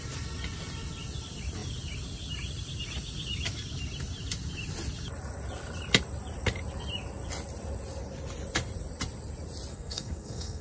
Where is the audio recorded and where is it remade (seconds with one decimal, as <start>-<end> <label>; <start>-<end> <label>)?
0.0-9.7 recorded; 9.7-10.6 remade